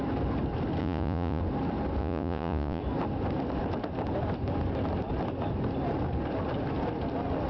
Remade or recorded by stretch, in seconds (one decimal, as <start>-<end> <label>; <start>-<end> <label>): 0.0-0.8 recorded; 0.8-1.4 remade; 1.4-2.0 recorded; 2.0-2.8 remade; 2.8-7.5 recorded